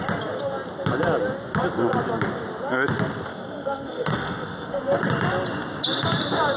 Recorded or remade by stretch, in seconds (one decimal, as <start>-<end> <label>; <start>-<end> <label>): 0.0-3.3 recorded; 3.3-4.8 remade; 4.8-6.6 recorded